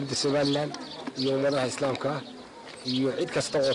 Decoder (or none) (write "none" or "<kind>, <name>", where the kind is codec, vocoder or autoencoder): none